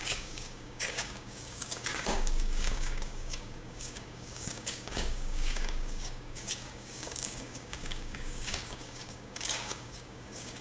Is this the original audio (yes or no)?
no